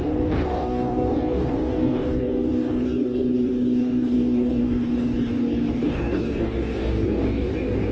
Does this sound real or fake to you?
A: fake